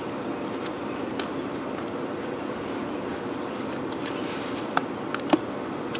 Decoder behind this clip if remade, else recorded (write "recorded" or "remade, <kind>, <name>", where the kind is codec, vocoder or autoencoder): recorded